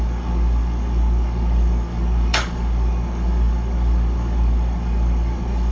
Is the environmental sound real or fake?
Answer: fake